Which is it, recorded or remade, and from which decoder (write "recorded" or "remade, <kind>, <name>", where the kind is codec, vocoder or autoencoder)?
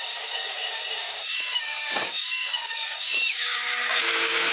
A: remade, codec, DAC